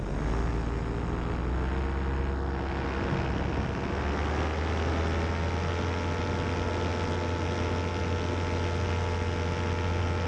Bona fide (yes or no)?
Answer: yes